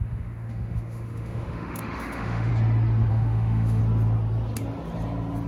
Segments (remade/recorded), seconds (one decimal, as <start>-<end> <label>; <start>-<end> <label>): 0.0-2.5 remade; 2.5-3.1 recorded; 3.1-3.8 remade; 3.8-5.5 recorded